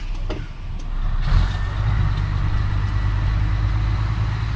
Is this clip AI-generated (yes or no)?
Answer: no